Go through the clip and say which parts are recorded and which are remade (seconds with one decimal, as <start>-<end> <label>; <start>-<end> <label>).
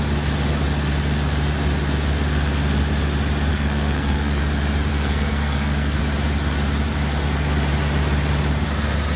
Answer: 0.0-3.5 recorded; 3.5-4.4 remade; 4.4-4.9 recorded; 4.9-6.0 remade; 6.0-9.2 recorded